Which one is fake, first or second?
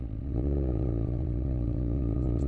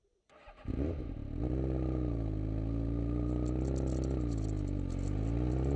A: first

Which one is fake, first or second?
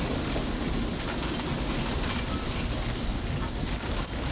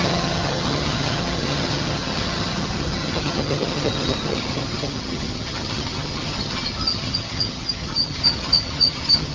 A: second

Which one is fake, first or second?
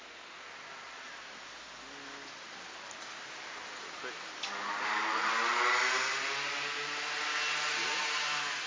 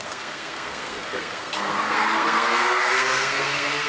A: second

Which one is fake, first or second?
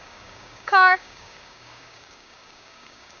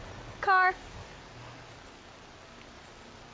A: first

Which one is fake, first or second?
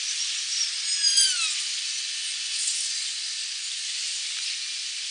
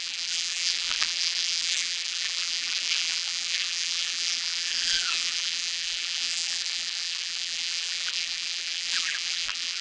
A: second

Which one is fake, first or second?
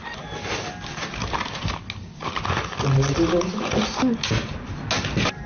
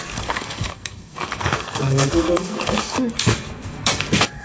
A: second